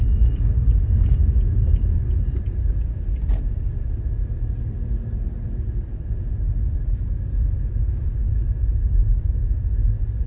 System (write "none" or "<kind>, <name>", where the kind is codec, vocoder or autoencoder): none